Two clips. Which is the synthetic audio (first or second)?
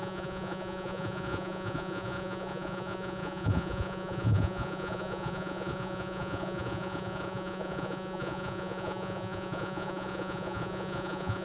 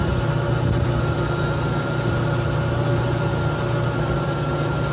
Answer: first